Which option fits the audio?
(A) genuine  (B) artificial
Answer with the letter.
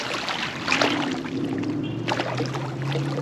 A